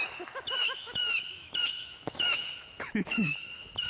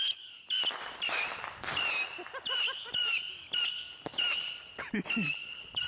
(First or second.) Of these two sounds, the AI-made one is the first